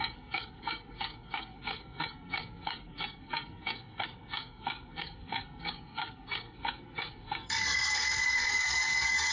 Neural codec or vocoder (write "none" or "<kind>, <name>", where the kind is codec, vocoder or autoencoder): codec, SNAC